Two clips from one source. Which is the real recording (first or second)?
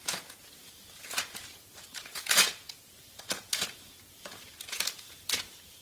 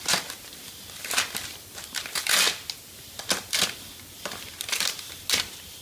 second